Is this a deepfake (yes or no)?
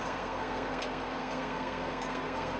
yes